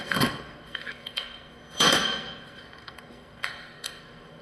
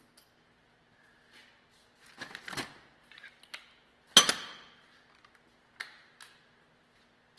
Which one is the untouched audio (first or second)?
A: second